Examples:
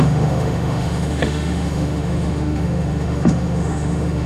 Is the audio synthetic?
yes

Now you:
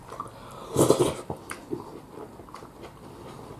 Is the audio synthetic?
no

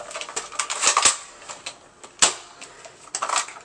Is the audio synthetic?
no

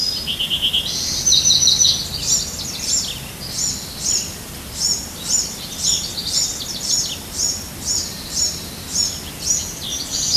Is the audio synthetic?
no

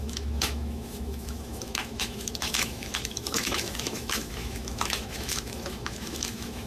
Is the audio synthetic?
yes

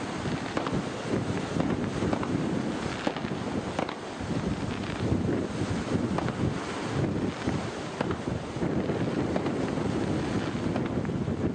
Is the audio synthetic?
no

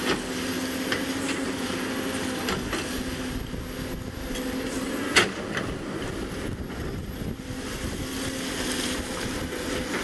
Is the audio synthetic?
no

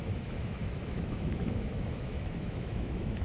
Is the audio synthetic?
yes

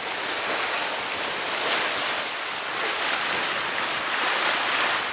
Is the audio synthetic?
no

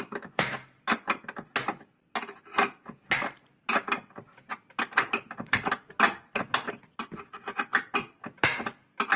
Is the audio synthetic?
no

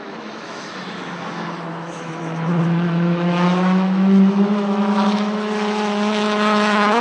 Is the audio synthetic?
yes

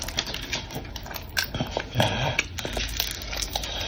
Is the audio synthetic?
no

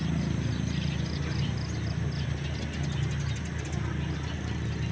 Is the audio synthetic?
no